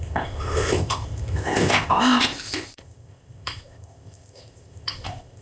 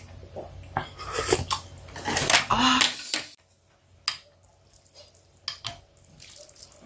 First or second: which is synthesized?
first